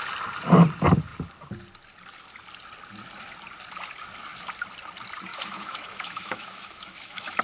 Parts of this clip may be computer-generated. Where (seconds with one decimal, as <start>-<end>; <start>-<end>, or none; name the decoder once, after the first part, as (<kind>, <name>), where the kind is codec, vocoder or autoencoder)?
5.3-7.4 (autoencoder, DAC-VAE)